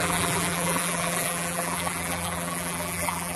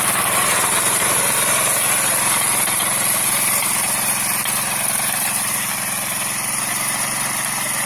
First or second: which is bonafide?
second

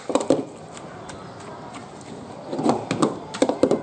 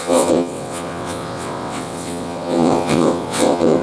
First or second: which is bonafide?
first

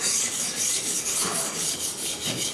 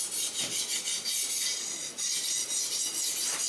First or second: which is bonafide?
second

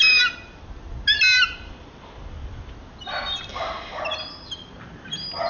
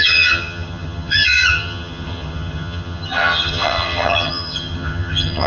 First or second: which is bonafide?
first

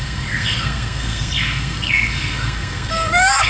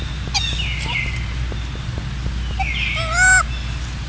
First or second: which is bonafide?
second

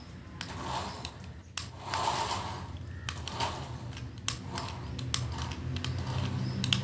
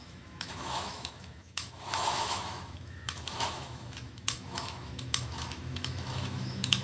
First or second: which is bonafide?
first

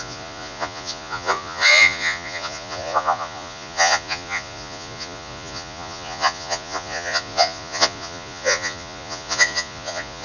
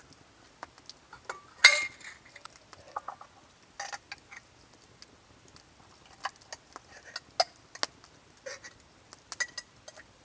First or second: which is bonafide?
second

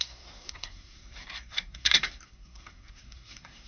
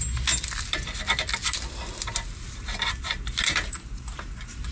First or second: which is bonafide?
second